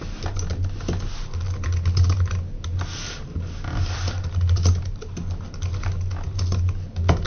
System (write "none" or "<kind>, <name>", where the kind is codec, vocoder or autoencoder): none